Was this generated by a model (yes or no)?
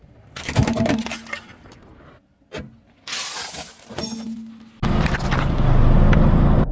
no